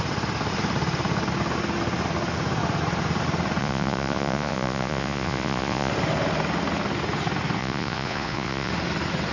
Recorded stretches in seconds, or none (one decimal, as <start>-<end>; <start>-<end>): 0.0-3.6; 5.9-7.6; 8.7-9.3